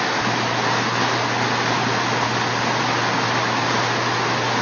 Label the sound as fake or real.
real